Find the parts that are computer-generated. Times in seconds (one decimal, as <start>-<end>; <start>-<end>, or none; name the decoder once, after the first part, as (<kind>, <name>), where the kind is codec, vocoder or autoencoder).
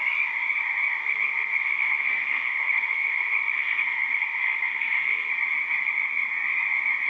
1.0-5.3 (codec, SNAC)